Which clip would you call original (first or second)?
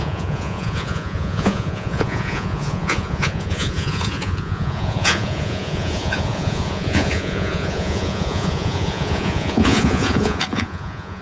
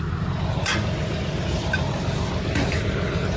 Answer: second